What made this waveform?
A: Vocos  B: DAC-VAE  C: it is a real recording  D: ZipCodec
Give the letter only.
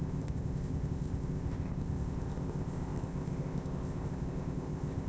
D